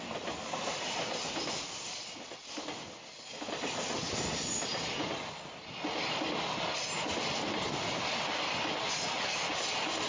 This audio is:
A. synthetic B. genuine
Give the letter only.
B